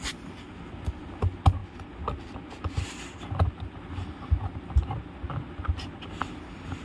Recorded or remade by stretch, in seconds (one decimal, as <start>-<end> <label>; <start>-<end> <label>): 0.0-6.8 recorded